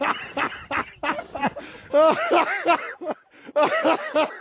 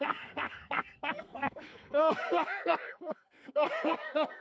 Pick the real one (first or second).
first